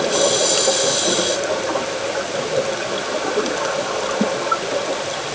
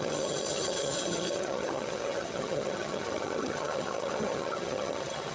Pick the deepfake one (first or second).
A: second